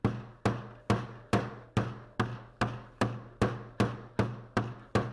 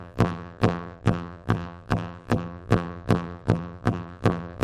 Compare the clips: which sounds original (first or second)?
first